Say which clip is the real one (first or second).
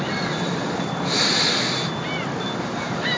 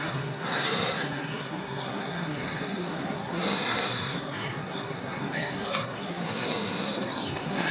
first